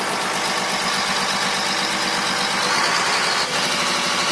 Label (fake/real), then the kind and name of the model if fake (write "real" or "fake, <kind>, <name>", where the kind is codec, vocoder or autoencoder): real